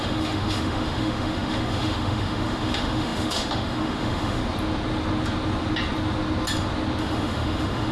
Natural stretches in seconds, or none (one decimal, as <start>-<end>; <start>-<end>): 4.4-7.0